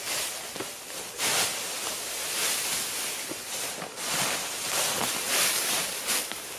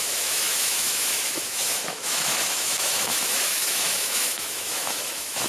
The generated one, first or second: second